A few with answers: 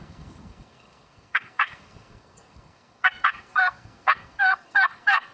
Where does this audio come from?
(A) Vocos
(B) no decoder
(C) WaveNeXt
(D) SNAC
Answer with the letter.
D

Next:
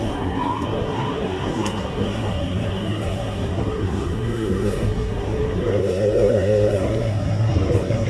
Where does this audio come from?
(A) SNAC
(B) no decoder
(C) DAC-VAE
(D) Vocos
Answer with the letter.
A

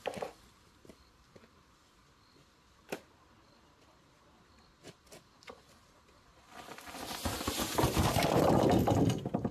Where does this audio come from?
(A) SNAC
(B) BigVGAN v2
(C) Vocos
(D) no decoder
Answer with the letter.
D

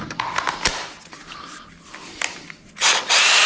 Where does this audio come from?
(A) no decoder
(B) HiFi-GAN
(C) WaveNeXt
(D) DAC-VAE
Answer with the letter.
A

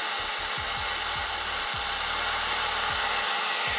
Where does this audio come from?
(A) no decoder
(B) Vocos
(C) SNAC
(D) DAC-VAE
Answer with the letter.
A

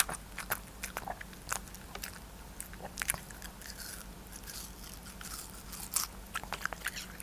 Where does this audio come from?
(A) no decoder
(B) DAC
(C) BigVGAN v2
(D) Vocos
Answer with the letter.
A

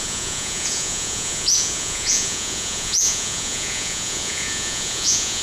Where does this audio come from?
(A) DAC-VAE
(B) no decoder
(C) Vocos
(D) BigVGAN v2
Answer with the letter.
C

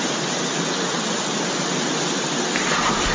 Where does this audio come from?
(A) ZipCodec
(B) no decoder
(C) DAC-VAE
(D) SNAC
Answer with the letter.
B